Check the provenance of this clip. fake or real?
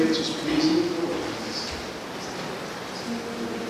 real